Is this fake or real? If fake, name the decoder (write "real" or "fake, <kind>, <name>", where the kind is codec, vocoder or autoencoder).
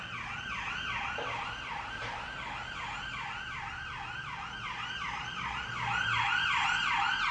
real